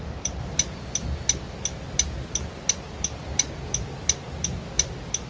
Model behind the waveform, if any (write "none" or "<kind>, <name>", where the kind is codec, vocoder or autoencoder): none